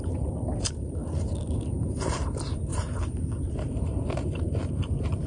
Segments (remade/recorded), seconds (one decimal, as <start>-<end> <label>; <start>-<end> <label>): 0.0-5.3 remade

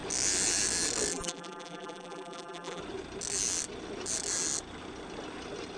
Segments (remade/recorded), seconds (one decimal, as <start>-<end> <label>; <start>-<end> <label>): 0.0-1.1 recorded; 1.1-2.8 remade; 2.8-5.8 recorded

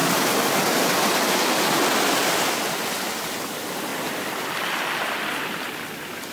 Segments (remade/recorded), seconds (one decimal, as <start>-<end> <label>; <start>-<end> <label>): 0.0-3.4 remade; 3.4-3.9 recorded; 3.9-5.0 remade; 5.0-6.3 recorded

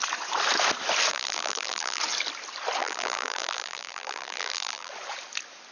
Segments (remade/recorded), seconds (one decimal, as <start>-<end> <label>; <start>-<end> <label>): 0.0-1.1 recorded; 1.1-2.0 remade; 2.0-2.8 recorded; 2.8-4.9 remade; 4.9-5.7 recorded

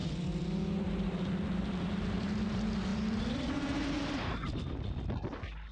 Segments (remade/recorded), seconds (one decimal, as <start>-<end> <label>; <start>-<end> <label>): 0.0-2.3 remade; 2.3-2.9 recorded; 2.9-3.5 remade; 3.5-5.7 recorded

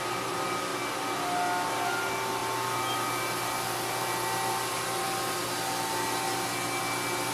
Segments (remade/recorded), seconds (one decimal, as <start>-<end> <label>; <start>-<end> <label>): 0.0-7.3 recorded

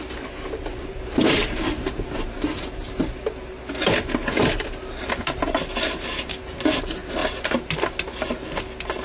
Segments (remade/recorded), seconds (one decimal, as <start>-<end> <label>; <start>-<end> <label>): 0.0-0.7 recorded; 0.7-2.5 remade; 2.5-7.2 recorded; 7.2-7.8 remade; 7.8-9.0 recorded